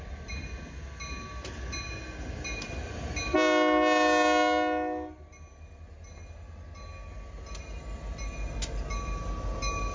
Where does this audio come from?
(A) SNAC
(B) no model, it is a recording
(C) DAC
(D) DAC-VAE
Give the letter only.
B